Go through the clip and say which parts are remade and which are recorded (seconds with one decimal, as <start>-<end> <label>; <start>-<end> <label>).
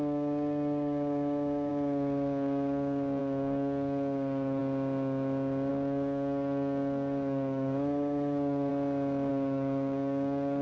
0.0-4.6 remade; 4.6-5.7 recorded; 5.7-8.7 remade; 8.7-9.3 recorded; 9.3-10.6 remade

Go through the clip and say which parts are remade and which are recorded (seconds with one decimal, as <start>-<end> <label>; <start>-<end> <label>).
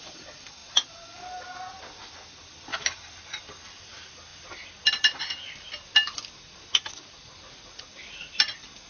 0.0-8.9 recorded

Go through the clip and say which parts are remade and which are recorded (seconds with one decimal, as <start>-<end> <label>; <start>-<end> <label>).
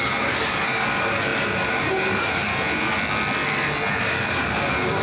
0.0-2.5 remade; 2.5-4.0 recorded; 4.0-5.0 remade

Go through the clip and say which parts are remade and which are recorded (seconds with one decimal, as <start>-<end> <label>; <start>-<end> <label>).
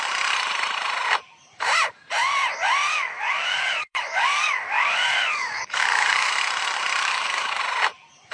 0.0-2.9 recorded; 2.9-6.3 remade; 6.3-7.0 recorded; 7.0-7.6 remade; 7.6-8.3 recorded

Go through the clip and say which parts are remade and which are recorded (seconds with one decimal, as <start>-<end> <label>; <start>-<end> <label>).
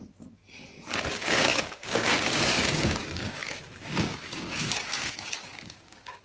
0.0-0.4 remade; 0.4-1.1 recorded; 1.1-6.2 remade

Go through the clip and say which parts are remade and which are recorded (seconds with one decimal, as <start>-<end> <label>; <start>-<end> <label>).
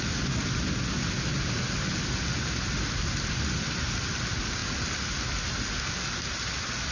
0.0-6.9 recorded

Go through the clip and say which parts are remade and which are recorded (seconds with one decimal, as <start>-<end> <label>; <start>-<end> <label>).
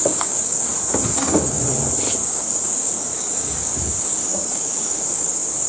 0.0-0.7 remade; 0.7-1.1 recorded; 1.1-1.6 remade; 1.6-2.2 recorded; 2.2-5.7 remade